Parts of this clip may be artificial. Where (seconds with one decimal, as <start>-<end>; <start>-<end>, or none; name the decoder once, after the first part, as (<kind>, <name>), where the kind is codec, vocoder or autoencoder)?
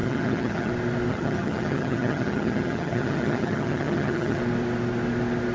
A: 0.0-0.7 (vocoder, HiFi-GAN); 1.1-4.4